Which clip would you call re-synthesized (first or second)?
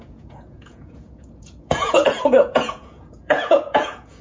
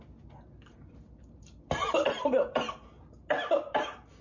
first